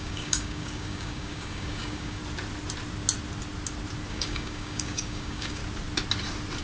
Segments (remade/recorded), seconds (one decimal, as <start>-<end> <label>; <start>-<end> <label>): 0.0-2.2 remade; 2.2-4.1 recorded; 4.1-5.6 remade; 5.6-6.6 recorded

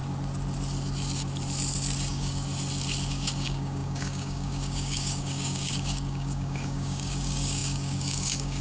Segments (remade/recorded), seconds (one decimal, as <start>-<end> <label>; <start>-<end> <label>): 0.0-2.1 recorded; 2.1-2.5 remade; 2.5-3.1 recorded; 3.1-8.6 remade

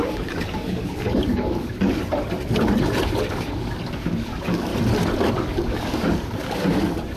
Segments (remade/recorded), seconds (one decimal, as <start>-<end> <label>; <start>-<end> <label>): 0.0-2.0 remade; 2.0-3.3 recorded; 3.3-4.7 remade; 4.7-5.3 recorded; 5.3-7.2 remade

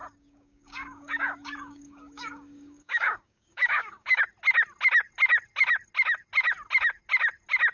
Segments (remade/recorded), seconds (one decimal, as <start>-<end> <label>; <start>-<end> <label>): 0.0-4.2 remade; 4.2-7.7 recorded

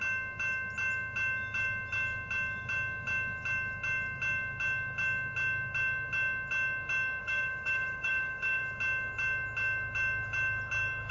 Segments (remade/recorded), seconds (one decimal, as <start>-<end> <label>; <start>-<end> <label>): 0.0-7.2 recorded; 7.2-8.6 remade; 8.6-11.1 recorded

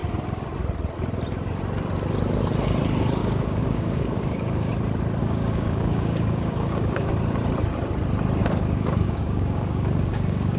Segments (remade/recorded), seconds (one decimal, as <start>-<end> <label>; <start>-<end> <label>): 0.0-3.2 recorded; 3.2-4.7 remade; 4.7-5.2 recorded; 5.2-7.1 remade; 7.1-8.4 recorded; 8.4-10.6 remade

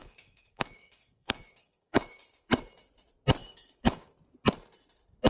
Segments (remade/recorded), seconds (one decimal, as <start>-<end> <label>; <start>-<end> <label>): 0.0-2.6 remade; 2.6-3.4 recorded; 3.4-4.1 remade; 4.1-5.3 recorded